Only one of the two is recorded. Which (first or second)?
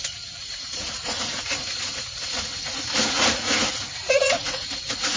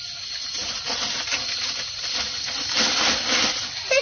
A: second